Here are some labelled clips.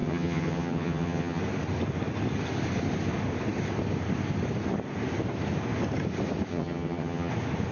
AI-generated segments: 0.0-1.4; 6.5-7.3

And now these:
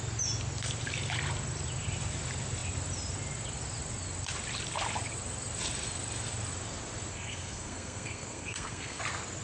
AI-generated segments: 7.1-9.0

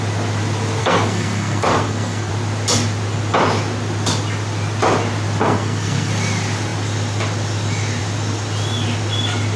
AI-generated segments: 0.8-2.3; 5.4-6.1

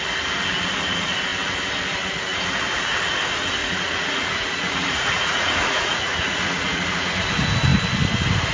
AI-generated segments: 3.6-7.3